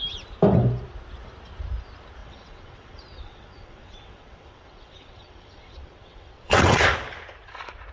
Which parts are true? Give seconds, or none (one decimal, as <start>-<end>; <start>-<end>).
0.0-2.2; 6.8-7.9